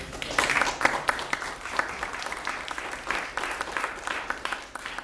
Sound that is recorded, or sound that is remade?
recorded